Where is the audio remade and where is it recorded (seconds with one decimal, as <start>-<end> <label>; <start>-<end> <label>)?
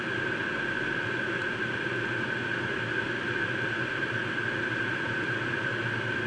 0.0-6.3 recorded